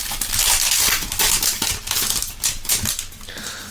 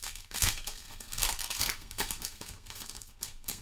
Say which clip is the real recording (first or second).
first